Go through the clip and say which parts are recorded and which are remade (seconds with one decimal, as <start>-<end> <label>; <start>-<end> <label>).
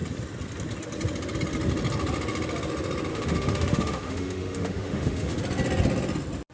0.0-3.1 recorded; 3.1-5.4 remade; 5.4-6.5 recorded